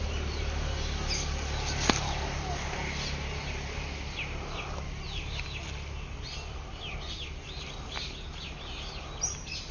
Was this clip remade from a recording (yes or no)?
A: no